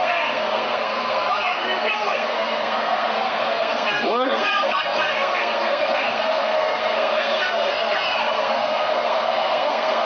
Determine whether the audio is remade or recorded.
remade